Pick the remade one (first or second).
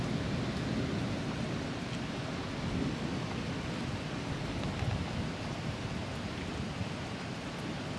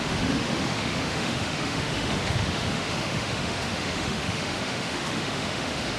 second